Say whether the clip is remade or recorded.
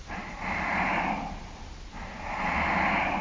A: recorded